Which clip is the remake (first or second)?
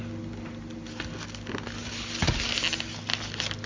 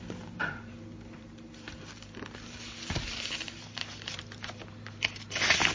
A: second